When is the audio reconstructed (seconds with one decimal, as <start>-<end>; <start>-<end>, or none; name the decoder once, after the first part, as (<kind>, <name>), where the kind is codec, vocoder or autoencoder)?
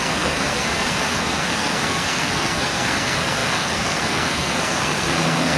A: 0.0-5.6 (codec, SNAC)